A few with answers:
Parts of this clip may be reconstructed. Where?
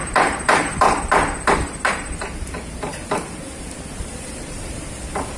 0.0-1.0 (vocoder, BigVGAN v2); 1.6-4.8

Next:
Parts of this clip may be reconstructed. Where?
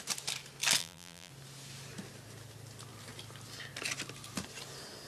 0.8-1.3 (vocoder, BigVGAN v2)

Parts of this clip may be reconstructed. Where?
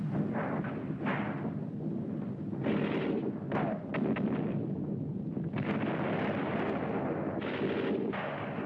3.9-6.8 (vocoder, BigVGAN v2)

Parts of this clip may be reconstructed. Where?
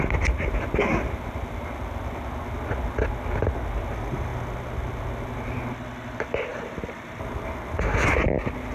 6.5-7.8 (vocoder, BigVGAN v2)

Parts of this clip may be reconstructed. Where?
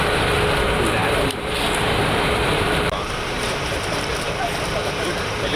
1.0-4.1 (vocoder, BigVGAN v2); 4.8-5.6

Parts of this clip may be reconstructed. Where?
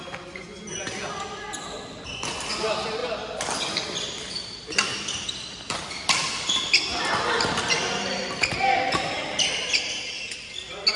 none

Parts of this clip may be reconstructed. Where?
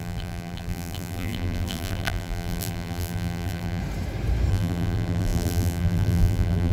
0.0-3.8 (vocoder, BigVGAN v2); 4.5-6.7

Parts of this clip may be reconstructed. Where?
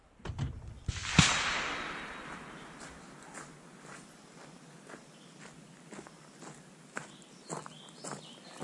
none